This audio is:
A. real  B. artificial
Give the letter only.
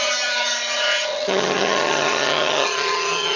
B